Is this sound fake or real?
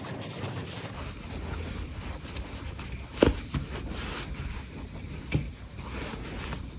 real